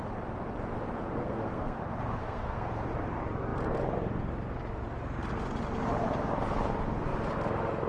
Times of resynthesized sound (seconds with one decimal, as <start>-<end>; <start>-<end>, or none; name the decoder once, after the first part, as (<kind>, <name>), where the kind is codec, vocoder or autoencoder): 1.2-1.8 (codec, SNAC); 2.2-2.7